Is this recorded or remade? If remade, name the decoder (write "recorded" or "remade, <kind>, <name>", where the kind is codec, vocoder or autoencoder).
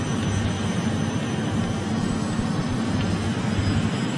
recorded